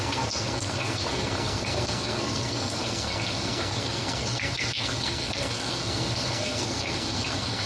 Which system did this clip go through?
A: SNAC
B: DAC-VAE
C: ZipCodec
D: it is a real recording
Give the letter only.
A